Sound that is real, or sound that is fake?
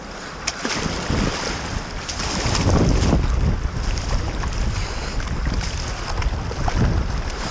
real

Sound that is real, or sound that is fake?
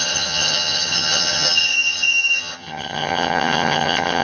fake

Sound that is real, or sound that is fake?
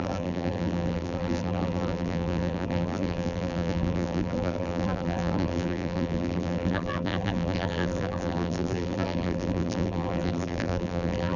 fake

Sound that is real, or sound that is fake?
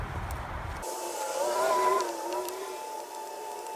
fake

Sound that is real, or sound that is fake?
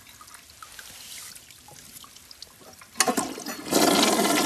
real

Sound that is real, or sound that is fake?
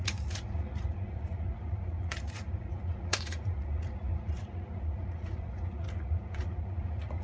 fake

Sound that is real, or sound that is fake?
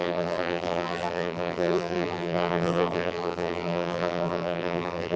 fake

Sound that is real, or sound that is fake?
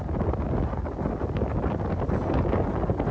real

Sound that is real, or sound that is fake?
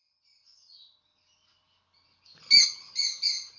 real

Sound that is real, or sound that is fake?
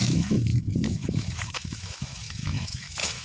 fake